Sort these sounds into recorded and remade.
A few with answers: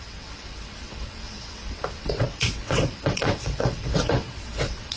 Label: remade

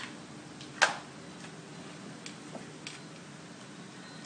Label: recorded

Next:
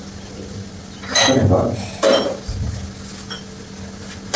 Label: recorded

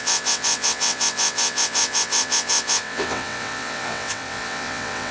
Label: remade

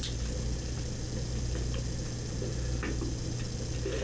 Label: recorded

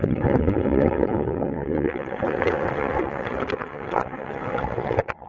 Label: remade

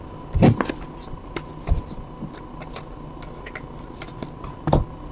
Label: recorded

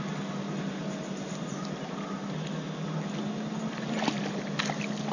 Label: recorded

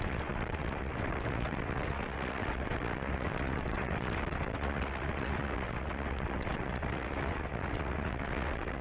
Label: remade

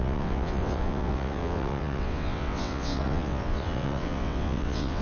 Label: remade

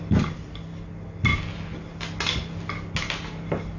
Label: recorded